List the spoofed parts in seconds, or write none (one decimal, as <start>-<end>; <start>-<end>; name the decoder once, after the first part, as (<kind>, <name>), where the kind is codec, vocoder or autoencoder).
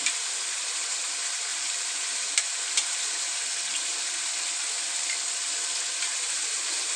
1.5-4.1 (vocoder, BigVGAN v2)